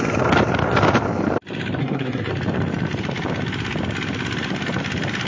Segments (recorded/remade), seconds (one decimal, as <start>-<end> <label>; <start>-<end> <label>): 0.0-1.8 recorded; 1.8-2.3 remade; 2.3-5.3 recorded